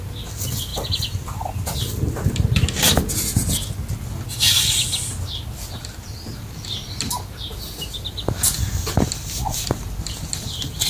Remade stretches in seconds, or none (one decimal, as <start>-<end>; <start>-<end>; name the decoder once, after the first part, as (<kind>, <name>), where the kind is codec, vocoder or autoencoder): none